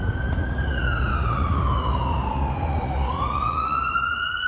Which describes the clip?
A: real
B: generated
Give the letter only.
B